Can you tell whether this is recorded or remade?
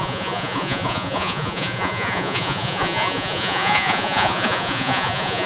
remade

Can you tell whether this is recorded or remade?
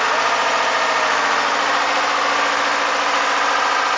recorded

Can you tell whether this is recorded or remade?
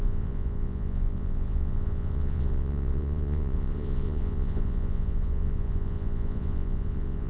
remade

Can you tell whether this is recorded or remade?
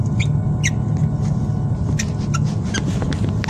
recorded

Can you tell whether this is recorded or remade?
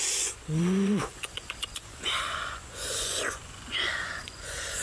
remade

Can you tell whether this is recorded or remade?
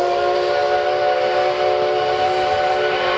recorded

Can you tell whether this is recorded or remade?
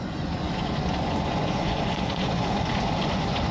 remade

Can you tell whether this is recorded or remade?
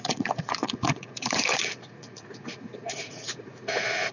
remade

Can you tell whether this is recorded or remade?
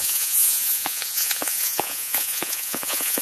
remade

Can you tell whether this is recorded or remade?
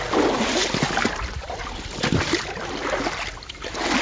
recorded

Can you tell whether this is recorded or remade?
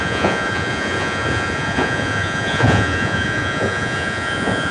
remade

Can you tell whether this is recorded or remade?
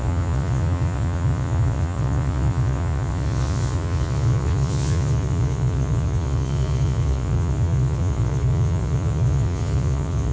remade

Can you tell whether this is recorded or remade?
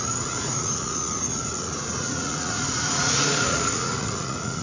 remade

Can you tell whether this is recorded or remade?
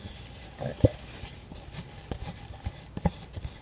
recorded